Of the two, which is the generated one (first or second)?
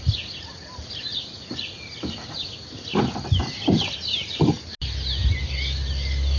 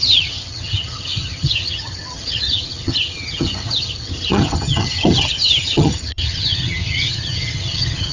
second